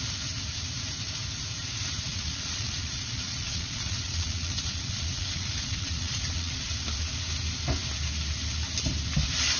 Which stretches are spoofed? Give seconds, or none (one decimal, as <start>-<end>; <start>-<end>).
2.1-6.7